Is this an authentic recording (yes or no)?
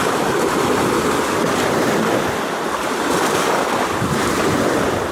yes